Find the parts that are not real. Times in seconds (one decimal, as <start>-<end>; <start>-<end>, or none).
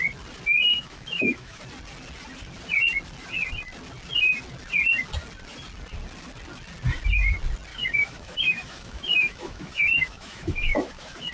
0.7-1.6; 7.7-11.3